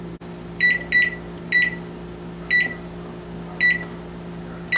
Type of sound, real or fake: real